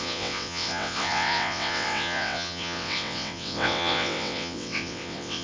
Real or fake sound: fake